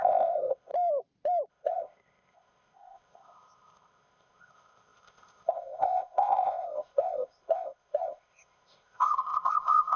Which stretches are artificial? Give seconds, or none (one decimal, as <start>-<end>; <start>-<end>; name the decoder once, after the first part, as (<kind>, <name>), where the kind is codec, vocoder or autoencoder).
0.0-0.7 (codec, ZipCodec); 1.5-10.0